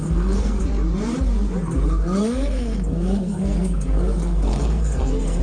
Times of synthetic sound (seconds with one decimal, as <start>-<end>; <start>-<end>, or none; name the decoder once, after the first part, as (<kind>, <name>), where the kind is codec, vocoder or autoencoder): 0.0-0.6 (codec, SNAC); 2.2-5.4